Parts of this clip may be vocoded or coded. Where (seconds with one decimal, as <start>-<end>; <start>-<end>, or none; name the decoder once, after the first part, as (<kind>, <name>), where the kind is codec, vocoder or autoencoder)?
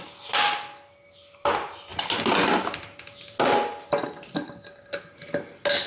none